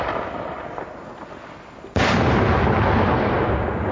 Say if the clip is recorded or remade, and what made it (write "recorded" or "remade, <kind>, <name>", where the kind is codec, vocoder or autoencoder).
recorded